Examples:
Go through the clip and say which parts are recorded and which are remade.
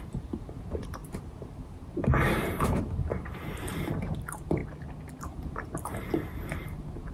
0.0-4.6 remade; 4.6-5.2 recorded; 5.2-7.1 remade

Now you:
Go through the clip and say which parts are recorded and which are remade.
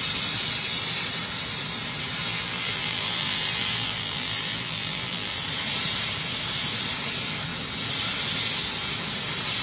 0.0-2.2 recorded; 2.2-5.4 remade; 5.4-9.6 recorded